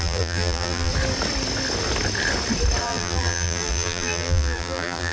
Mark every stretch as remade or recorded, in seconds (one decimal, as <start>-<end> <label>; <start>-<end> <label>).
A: 0.0-0.9 remade; 0.9-2.8 recorded; 2.8-5.1 remade